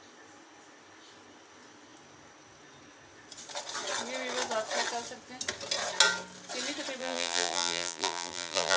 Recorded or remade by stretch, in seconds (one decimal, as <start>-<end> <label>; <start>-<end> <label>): 0.0-7.0 recorded; 7.0-8.8 remade